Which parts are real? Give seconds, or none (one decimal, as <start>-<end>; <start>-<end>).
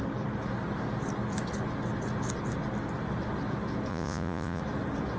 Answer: 0.0-3.9; 4.6-5.2